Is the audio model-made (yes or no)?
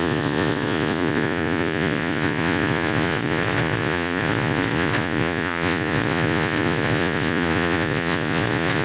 yes